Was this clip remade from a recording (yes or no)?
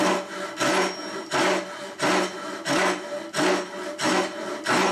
no